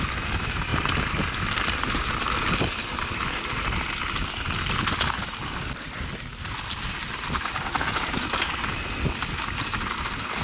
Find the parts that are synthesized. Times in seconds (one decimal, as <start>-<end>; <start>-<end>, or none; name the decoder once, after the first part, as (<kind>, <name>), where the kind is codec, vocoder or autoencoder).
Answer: none